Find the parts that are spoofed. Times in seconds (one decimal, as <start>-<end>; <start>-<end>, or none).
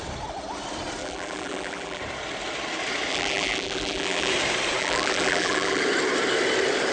1.0-2.0; 3.1-4.3; 4.8-5.8